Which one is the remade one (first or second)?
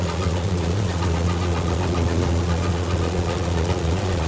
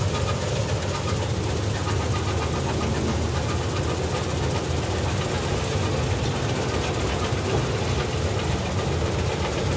first